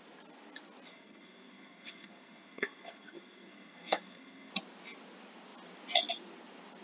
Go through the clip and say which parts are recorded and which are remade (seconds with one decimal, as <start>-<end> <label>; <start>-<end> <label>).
0.0-0.9 recorded; 0.9-4.5 remade; 4.5-6.8 recorded